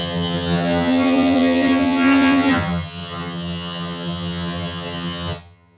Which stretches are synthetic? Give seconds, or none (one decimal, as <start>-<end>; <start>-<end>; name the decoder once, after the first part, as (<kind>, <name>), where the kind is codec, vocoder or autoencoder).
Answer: 0.0-5.8 (vocoder, HiFi-GAN)